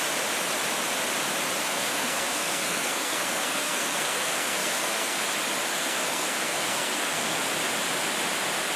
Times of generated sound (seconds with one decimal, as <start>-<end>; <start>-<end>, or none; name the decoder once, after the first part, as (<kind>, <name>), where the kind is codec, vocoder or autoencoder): 1.6-5.2 (codec, SNAC); 5.7-7.4